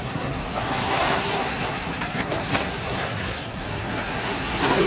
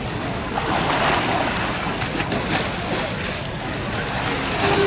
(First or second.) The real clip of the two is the second